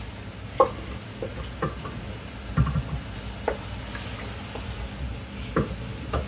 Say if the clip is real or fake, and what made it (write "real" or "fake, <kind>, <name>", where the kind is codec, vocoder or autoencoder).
real